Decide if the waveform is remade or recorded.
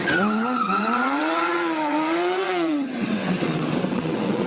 remade